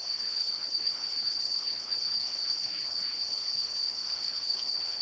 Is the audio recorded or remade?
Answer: remade